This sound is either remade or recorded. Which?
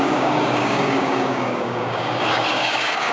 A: remade